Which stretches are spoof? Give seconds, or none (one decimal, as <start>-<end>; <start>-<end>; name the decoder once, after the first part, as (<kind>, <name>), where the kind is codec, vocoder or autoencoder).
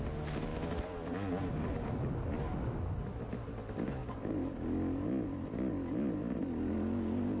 none